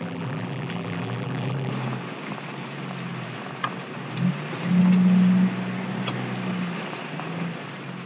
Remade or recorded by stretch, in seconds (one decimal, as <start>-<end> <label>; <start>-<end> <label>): 0.0-1.7 remade; 1.7-8.1 recorded